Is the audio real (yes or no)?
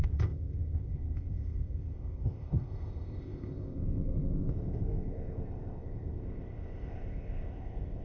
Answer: no